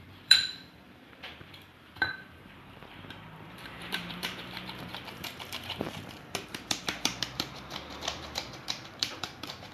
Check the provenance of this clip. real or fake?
fake